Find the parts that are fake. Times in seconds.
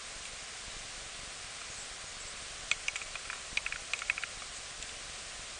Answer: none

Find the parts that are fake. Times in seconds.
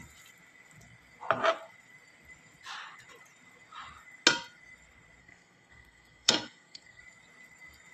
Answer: 5.2-7.0 (codec, SNAC)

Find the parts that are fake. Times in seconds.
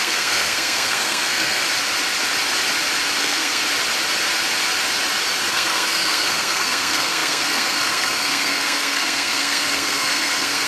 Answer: 0.0-1.6 (codec, SNAC); 3.2-3.6; 5.5-10.7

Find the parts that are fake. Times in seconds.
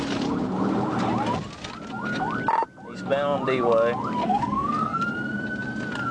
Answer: 4.2-5.0 (codec, SNAC)